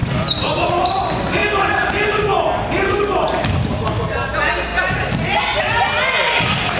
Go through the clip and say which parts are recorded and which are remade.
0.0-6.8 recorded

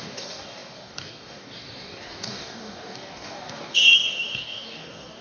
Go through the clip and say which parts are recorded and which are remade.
0.0-5.2 remade